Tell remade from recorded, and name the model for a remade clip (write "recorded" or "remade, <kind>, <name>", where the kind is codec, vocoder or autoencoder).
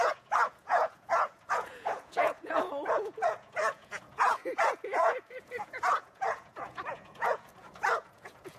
remade, vocoder, Vocos